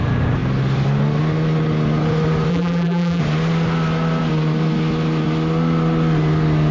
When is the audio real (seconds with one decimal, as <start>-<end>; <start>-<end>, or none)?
0.0-2.5; 3.2-6.7